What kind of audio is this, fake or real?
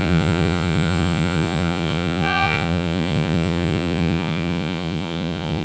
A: fake